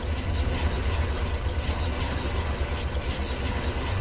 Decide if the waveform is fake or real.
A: real